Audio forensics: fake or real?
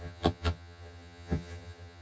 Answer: fake